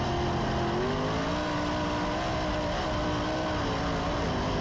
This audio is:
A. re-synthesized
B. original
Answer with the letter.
B